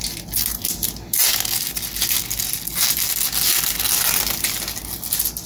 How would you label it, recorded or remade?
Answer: recorded